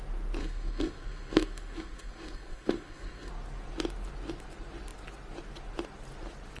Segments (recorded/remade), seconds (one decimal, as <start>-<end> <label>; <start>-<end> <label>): 0.0-0.4 recorded; 0.4-3.3 remade; 3.3-6.6 recorded